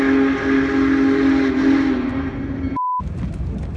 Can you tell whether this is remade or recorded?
recorded